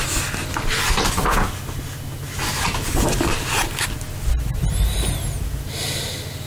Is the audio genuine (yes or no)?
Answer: yes